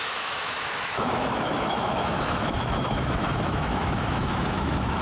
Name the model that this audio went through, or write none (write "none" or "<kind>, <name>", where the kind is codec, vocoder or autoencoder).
autoencoder, DAC-VAE